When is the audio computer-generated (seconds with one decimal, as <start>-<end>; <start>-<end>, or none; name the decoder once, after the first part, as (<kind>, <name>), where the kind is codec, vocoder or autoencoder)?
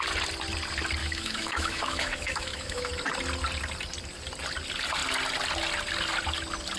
1.0-2.9 (autoencoder, DAC-VAE)